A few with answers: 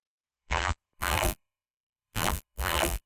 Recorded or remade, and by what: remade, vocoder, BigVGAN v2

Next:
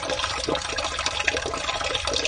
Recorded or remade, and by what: remade, vocoder, BigVGAN v2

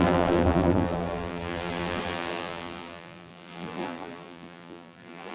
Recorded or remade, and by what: remade, vocoder, BigVGAN v2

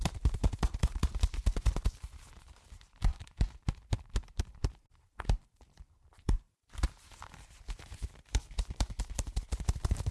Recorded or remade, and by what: remade, vocoder, BigVGAN v2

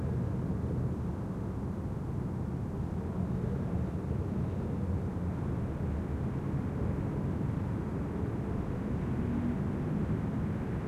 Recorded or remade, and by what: recorded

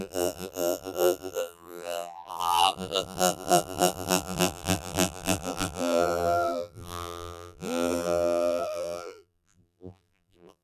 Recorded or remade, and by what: remade, vocoder, BigVGAN v2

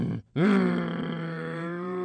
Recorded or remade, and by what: remade, vocoder, BigVGAN v2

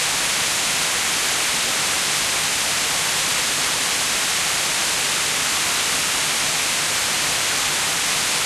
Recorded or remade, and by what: recorded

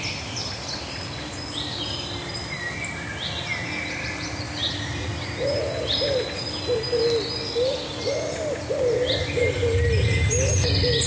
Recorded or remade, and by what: recorded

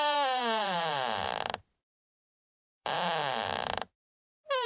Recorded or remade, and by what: remade, vocoder, BigVGAN v2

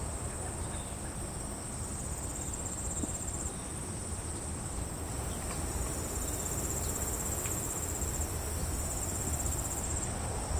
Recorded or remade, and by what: remade, vocoder, BigVGAN v2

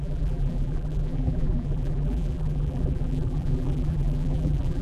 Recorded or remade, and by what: remade, vocoder, BigVGAN v2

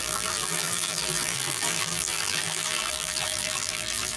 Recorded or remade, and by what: remade, vocoder, BigVGAN v2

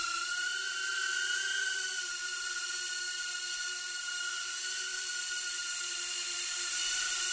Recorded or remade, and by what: remade, vocoder, BigVGAN v2